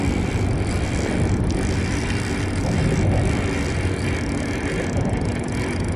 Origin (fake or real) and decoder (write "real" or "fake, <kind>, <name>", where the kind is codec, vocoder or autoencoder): real